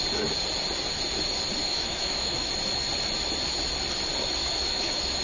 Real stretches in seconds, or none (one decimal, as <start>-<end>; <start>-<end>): 0.0-1.6; 2.5-4.4